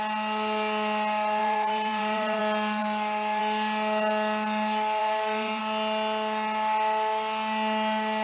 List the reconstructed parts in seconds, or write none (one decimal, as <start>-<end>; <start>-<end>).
1.4-2.4; 5.0-5.6